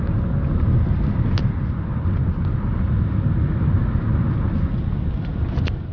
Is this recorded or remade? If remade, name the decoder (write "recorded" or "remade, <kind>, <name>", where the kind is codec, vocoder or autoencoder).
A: recorded